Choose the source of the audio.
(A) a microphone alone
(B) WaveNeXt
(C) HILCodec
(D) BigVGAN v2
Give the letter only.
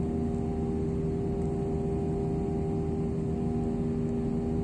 A